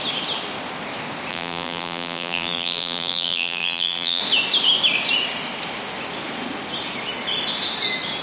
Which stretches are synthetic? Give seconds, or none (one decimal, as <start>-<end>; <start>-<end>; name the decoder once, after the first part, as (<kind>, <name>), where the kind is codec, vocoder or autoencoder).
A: 1.3-4.2 (vocoder, BigVGAN v2)